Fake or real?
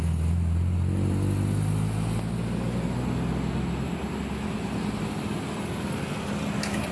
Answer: real